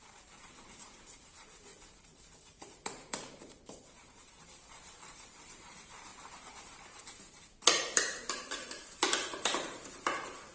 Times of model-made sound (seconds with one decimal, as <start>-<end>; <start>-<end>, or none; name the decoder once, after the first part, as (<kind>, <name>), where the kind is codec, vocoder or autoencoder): 0.0-10.5 (vocoder, BigVGAN v2)